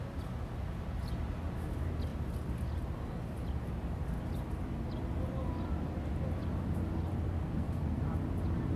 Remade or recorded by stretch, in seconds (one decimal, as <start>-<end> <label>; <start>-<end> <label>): 0.0-7.4 recorded; 7.4-8.0 remade; 8.0-8.8 recorded